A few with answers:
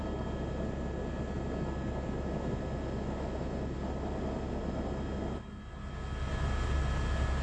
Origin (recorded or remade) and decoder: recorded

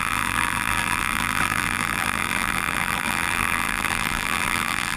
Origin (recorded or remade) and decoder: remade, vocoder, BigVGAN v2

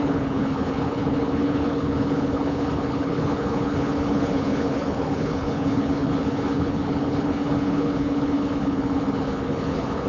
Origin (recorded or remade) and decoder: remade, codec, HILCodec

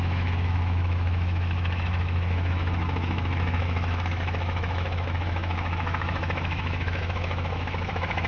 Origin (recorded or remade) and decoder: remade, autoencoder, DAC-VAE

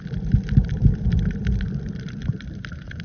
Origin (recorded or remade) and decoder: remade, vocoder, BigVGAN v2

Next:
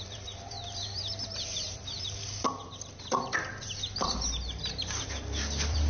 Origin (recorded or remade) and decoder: remade, vocoder, BigVGAN v2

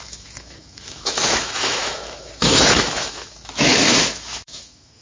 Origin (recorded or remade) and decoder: remade, autoencoder, DAC-VAE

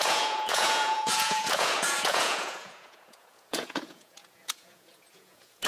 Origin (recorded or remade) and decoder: remade, vocoder, Vocos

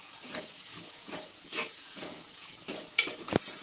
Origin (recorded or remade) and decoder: remade, vocoder, Vocos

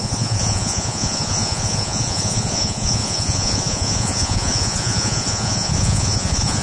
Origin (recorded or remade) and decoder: remade, vocoder, Vocos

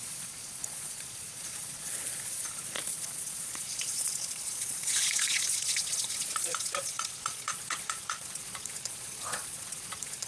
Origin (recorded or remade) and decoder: remade, vocoder, Vocos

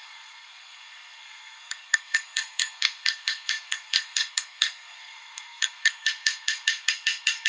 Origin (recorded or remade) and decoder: remade, codec, SNAC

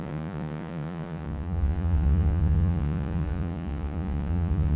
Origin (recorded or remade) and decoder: remade, vocoder, Vocos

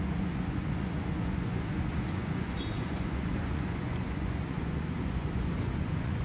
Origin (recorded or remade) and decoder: remade, vocoder, Vocos